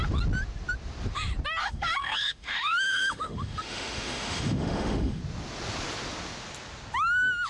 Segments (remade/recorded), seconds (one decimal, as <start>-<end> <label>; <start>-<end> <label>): 0.0-1.6 recorded; 1.6-5.2 remade; 5.2-7.5 recorded